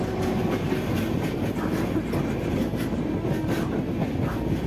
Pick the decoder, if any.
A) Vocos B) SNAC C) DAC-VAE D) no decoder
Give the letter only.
D